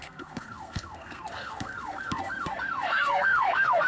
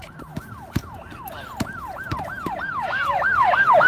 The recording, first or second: second